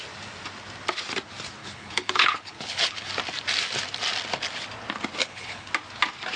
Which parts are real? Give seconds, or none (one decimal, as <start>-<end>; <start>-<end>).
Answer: 0.0-1.6; 3.1-5.2; 5.7-6.4